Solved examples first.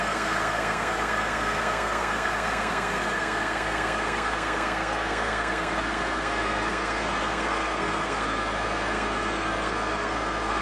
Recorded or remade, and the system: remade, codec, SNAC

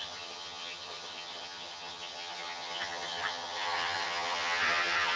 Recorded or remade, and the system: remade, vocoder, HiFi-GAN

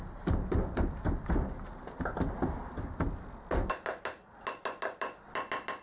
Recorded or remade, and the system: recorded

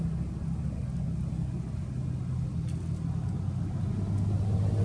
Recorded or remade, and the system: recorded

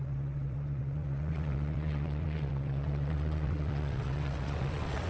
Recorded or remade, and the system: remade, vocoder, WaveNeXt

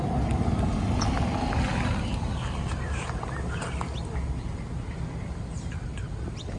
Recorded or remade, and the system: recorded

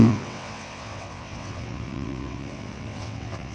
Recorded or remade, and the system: remade, vocoder, WaveNeXt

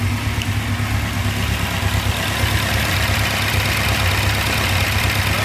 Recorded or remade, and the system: recorded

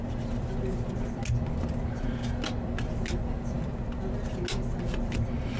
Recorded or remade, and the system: recorded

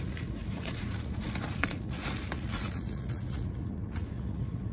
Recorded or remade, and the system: remade, vocoder, Vocos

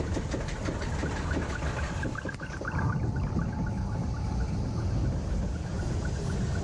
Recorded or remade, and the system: recorded